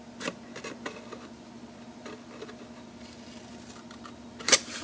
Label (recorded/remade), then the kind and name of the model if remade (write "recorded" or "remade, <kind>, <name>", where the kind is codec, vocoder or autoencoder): recorded